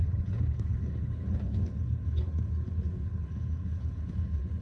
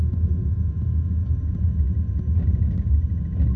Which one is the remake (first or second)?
first